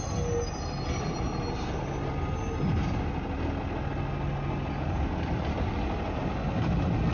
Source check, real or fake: real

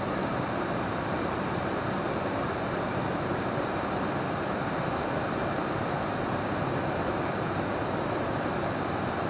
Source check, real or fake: fake